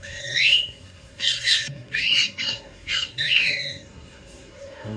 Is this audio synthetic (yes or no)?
yes